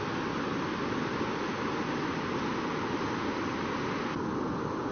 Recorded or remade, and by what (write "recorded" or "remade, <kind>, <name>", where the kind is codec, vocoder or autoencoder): recorded